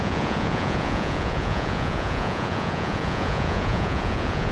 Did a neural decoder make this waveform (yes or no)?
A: yes